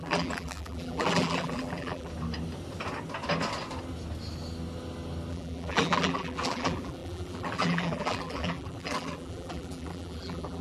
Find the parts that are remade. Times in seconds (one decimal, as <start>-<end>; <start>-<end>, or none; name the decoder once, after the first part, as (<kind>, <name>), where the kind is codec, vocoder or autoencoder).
0.0-2.1 (vocoder, BigVGAN v2); 5.3-10.6